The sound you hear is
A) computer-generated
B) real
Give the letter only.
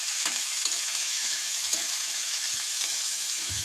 A